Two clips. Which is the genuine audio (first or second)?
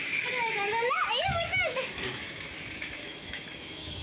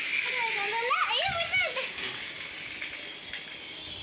second